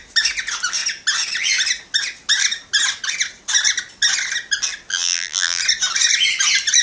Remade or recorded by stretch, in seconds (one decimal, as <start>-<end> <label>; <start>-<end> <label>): 0.0-4.9 recorded; 4.9-5.6 remade; 5.6-6.8 recorded